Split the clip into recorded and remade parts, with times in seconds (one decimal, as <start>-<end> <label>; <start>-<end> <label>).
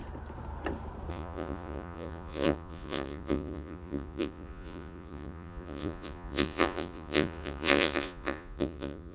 0.0-1.1 recorded; 1.1-9.1 remade